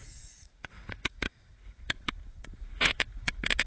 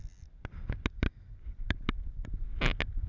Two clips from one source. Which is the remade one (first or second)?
first